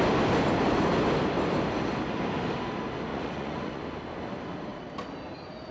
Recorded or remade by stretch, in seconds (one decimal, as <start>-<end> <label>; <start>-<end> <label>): 0.0-3.1 recorded; 3.1-3.8 remade; 3.8-5.7 recorded